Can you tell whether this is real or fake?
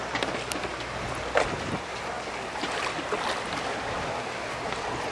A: real